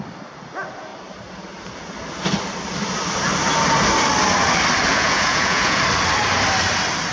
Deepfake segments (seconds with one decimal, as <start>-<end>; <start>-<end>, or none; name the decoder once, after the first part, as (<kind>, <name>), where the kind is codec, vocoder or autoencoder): 4.9-5.8 (vocoder, Vocos)